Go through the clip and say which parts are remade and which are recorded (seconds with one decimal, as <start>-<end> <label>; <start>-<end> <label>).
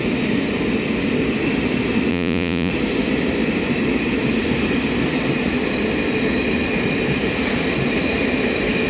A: 0.0-2.1 recorded; 2.1-2.7 remade; 2.7-8.9 recorded